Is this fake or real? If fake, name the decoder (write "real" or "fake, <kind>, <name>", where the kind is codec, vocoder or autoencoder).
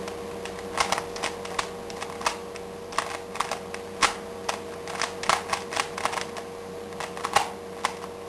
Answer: real